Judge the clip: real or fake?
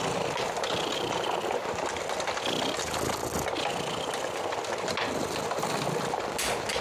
real